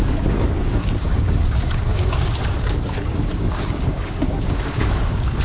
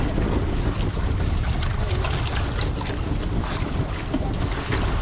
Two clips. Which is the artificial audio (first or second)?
first